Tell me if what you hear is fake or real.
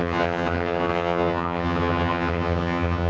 fake